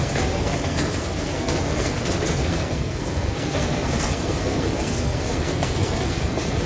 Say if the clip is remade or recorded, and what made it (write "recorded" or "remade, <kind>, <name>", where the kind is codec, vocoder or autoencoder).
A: remade, codec, SNAC